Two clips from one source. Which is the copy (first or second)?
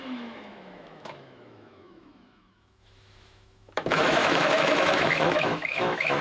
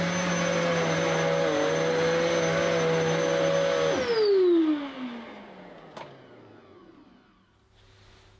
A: first